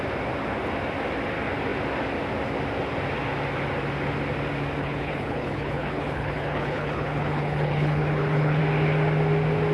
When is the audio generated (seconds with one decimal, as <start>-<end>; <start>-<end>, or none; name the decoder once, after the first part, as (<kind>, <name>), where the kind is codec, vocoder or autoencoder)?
4.8-8.6 (codec, HILCodec)